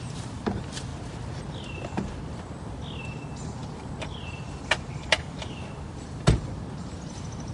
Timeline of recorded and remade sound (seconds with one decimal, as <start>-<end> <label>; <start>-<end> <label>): 0.0-7.5 recorded